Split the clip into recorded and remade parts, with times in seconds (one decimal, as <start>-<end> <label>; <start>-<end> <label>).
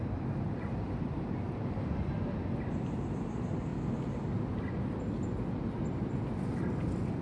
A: 0.0-7.2 recorded